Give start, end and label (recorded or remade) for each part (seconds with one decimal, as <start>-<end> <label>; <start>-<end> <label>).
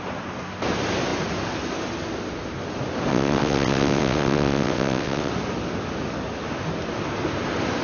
0.0-3.1 recorded; 3.1-5.3 remade; 5.3-7.8 recorded